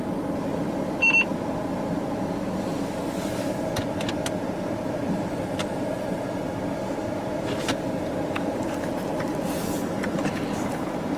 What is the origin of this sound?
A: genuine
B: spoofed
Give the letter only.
B